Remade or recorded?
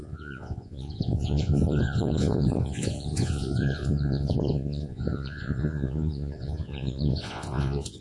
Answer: remade